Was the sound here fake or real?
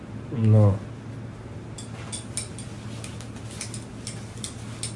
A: real